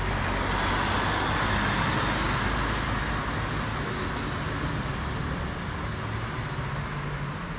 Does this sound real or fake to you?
real